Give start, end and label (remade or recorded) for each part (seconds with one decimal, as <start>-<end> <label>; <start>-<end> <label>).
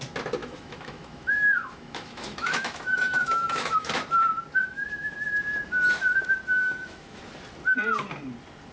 0.0-0.4 recorded; 0.4-3.9 remade; 3.9-4.6 recorded; 4.6-5.4 remade; 5.4-6.6 recorded; 6.6-7.2 remade; 7.2-8.7 recorded